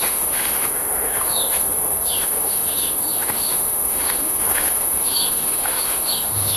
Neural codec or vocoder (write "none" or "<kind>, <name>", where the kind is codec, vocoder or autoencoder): autoencoder, DAC-VAE